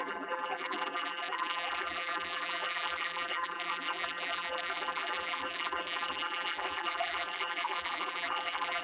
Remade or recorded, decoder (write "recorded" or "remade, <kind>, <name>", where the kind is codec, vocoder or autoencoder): remade, vocoder, BigVGAN v2